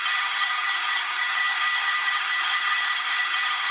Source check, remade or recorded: remade